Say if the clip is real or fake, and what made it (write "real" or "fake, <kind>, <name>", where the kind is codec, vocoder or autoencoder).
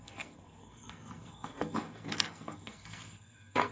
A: fake, codec, SNAC